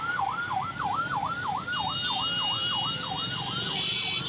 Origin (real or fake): fake